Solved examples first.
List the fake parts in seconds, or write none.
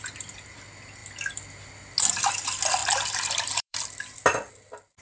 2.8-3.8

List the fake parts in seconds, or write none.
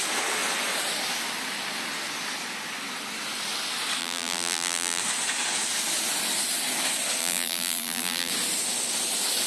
4.0-5.0; 7.2-8.3